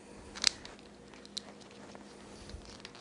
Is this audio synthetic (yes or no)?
no